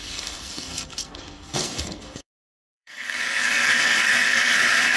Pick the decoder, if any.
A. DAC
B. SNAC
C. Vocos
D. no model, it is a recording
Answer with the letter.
B